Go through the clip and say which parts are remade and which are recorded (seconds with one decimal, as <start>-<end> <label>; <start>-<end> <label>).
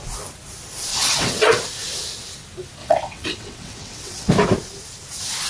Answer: 0.0-0.9 recorded; 0.9-1.6 remade; 1.6-2.8 recorded; 2.8-4.3 remade; 4.3-5.5 recorded